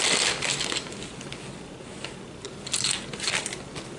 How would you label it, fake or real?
real